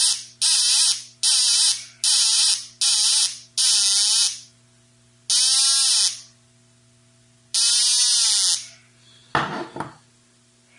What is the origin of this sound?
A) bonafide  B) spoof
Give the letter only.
A